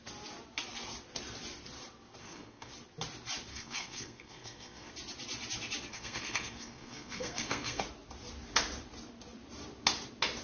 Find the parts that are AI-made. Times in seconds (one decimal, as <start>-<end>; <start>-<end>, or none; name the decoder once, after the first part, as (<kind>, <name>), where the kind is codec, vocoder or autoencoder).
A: 2.2-2.7 (codec, SNAC); 3.5-4.9; 5.9-7.8